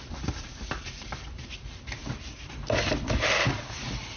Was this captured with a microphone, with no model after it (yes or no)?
no